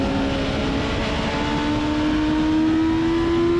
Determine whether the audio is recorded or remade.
recorded